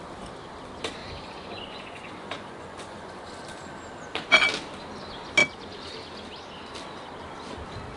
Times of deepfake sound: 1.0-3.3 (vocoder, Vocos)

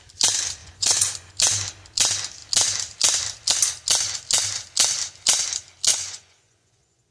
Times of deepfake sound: 0.6-1.3 (vocoder, Vocos); 5.9-7.1

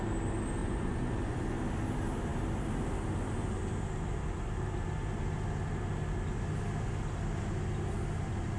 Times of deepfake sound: 0.6-1.6 (vocoder, Vocos)

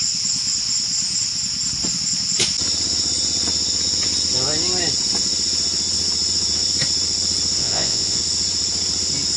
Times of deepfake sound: 7.6-8.2 (vocoder, Vocos)

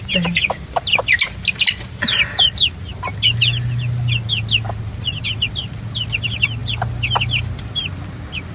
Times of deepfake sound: none